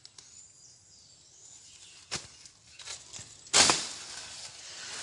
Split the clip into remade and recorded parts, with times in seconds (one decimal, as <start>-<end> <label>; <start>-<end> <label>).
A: 0.0-5.0 recorded